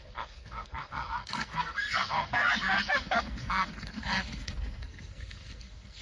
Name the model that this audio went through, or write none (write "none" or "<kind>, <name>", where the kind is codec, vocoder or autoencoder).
codec, SNAC